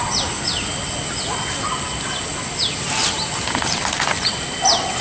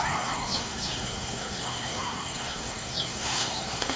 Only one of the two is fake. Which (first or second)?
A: second